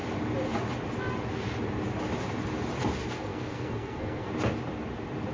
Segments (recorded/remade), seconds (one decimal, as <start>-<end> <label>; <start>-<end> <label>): 0.0-3.0 recorded; 3.0-4.3 remade; 4.3-5.3 recorded